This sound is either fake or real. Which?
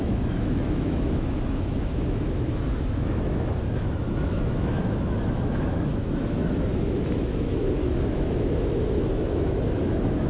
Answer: fake